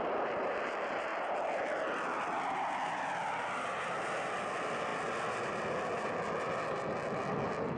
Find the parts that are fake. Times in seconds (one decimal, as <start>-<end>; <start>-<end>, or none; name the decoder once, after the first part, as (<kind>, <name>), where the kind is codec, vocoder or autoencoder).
none